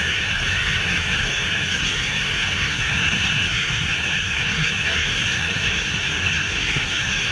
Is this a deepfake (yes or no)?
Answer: yes